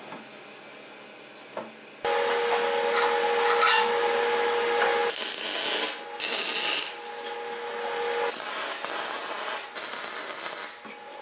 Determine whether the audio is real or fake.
real